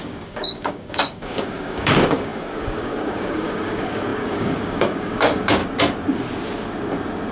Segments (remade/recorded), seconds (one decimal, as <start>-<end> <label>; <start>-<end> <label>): 0.0-5.6 remade; 5.6-7.3 recorded